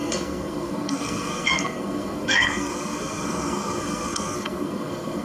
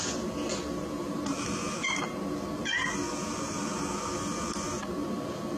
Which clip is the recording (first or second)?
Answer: second